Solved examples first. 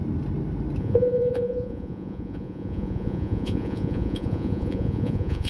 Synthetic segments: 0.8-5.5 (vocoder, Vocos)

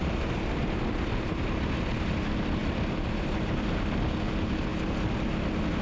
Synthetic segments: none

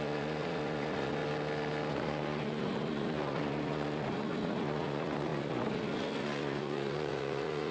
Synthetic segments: 0.0-1.2 (vocoder, Vocos); 1.9-7.7